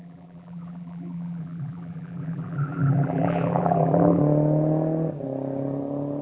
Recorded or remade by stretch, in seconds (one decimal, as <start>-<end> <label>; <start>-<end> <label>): 0.0-4.2 remade; 4.2-6.2 recorded